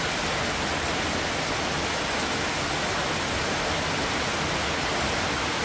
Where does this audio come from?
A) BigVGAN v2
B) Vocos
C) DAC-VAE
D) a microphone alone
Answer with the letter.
D